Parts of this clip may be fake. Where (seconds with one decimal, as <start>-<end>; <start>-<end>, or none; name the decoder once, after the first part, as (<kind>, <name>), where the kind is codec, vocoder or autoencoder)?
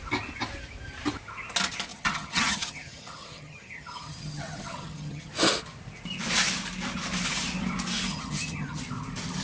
1.9-5.3 (vocoder, HiFi-GAN); 8.1-8.8